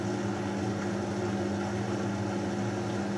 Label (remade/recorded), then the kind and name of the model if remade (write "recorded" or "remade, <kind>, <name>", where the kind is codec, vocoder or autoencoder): recorded